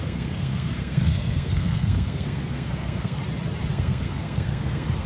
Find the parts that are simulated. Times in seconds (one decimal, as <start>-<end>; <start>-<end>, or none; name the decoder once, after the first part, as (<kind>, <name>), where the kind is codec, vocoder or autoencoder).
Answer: 0.0-3.2 (codec, SNAC); 3.7-5.1